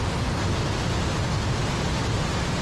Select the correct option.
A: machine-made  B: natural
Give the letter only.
B